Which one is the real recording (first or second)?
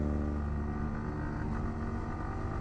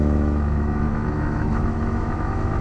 first